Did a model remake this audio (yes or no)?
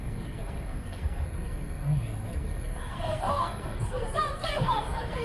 yes